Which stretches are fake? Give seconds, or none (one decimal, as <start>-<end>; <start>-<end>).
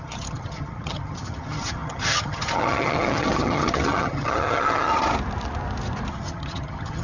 0.0-4.9; 6.1-7.0